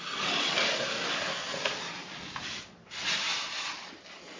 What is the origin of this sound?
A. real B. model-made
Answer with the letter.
A